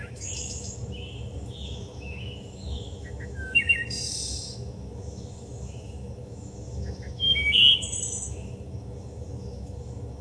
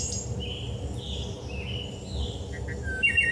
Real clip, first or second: second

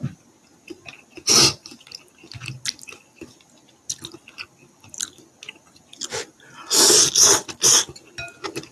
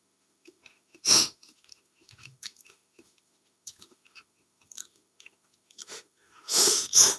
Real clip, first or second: first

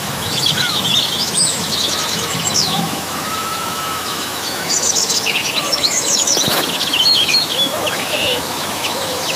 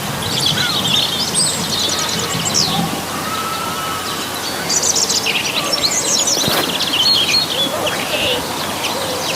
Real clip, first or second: second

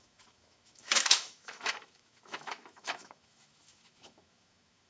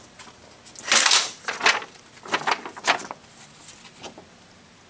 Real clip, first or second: second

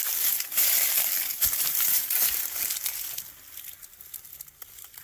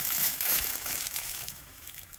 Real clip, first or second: first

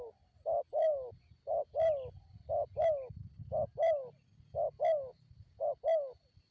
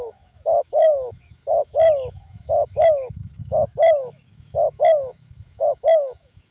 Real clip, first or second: first